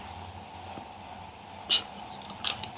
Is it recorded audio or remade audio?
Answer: recorded